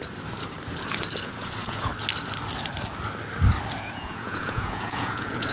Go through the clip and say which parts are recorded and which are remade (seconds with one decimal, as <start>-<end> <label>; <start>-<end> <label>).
0.0-1.2 recorded; 1.2-1.9 remade; 1.9-3.8 recorded; 3.8-5.5 remade

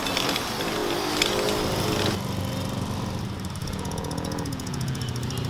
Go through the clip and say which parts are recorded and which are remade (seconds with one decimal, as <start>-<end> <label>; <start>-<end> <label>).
0.0-3.6 recorded; 3.6-5.0 remade; 5.0-5.5 recorded

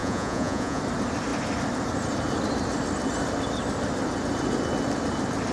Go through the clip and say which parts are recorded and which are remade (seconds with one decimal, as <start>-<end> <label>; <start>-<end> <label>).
0.0-0.8 remade; 0.8-5.5 recorded

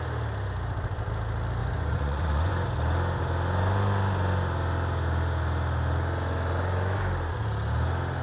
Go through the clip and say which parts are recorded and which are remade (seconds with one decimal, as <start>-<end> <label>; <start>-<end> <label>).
0.0-1.6 recorded; 1.6-2.5 remade; 2.5-8.2 recorded

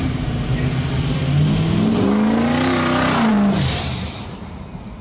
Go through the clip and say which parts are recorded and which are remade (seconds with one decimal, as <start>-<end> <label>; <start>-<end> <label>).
0.0-5.0 recorded